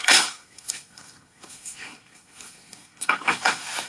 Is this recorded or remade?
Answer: remade